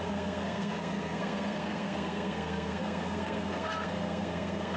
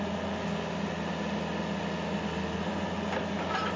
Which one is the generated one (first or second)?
first